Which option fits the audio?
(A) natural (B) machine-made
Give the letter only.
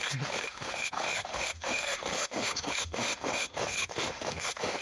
B